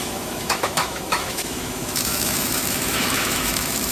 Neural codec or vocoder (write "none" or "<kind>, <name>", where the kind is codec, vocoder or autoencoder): autoencoder, DAC-VAE